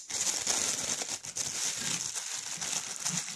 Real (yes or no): yes